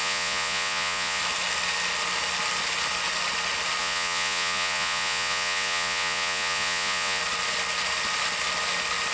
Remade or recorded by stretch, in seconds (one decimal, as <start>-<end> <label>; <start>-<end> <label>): 0.0-1.2 remade; 1.2-3.8 recorded; 3.8-7.2 remade; 7.2-9.1 recorded